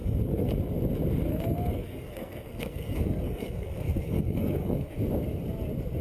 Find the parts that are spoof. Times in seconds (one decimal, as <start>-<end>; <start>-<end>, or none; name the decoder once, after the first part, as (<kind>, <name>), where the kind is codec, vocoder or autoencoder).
0.0-0.5 (codec, SNAC); 1.3-4.9